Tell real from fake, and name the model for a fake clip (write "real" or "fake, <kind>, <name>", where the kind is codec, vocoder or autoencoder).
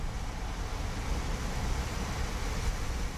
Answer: real